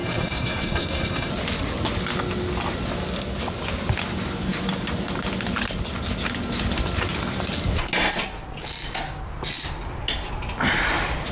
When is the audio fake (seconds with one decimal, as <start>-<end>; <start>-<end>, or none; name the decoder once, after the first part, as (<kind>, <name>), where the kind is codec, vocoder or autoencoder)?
0.0-1.3 (codec, SNAC)